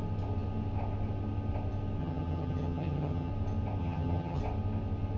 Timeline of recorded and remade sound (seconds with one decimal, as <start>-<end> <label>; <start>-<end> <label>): 0.0-2.0 recorded; 2.0-3.3 remade; 3.3-3.8 recorded; 3.8-4.4 remade; 4.4-5.2 recorded